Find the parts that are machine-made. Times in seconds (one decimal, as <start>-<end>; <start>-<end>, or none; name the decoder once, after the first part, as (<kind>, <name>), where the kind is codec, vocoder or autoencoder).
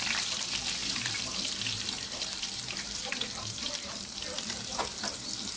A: 0.8-4.2 (vocoder, BigVGAN v2)